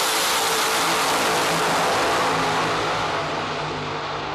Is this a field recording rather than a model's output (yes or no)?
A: yes